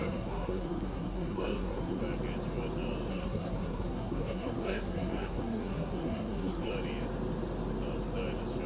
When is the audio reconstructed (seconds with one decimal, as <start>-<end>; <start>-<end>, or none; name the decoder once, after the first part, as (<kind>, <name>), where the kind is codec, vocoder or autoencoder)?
0.0-2.0 (codec, SNAC); 3.1-6.7